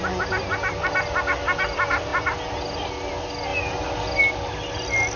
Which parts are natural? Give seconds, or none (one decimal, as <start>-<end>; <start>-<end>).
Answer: 0.0-5.2